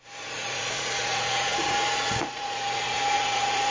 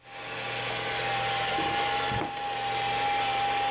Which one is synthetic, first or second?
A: first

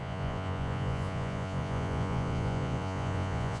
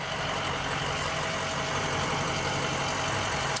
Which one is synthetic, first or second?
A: first